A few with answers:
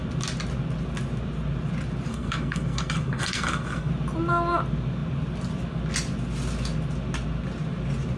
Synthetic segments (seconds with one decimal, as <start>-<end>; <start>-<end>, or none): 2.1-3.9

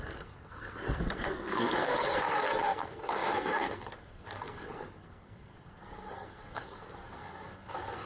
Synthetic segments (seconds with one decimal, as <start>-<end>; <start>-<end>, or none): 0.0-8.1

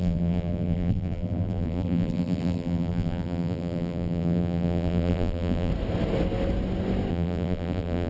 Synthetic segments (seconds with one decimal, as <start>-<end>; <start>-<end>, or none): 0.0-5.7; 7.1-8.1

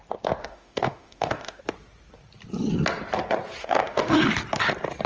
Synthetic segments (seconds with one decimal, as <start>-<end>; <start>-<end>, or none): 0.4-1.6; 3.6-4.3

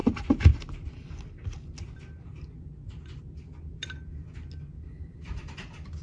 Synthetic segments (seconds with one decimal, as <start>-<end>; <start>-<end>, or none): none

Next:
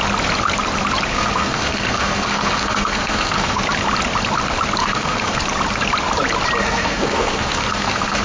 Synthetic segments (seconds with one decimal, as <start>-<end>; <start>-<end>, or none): 1.1-3.6; 4.8-5.4; 6.6-8.2

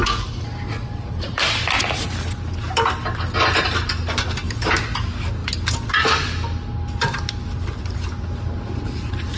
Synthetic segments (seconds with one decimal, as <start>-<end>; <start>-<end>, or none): none